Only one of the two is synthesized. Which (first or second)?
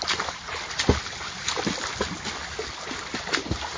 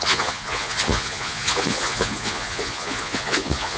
second